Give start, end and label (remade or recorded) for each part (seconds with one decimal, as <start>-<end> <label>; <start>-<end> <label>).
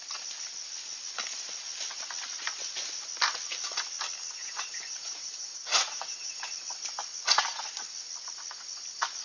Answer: 0.0-4.4 recorded; 4.4-6.5 remade; 6.5-9.2 recorded